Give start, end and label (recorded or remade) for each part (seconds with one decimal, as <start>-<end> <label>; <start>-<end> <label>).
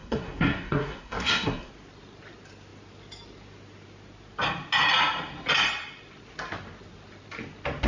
0.0-1.7 remade; 1.7-7.9 recorded